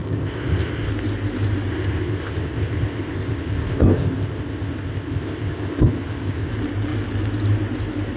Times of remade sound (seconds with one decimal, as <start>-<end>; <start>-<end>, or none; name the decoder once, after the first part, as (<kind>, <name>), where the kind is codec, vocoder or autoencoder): 0.0-0.9 (codec, ZipCodec); 1.7-6.5